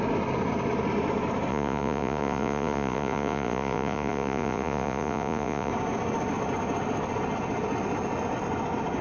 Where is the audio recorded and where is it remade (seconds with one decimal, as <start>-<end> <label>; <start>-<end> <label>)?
0.0-1.5 recorded; 1.5-5.7 remade; 5.7-9.0 recorded